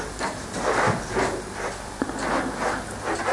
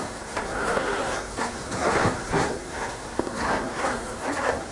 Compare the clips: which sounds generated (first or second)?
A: second